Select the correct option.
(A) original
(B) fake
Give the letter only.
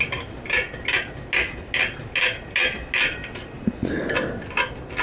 A